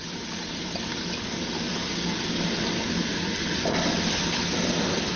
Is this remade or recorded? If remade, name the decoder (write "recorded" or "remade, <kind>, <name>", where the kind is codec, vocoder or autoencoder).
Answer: recorded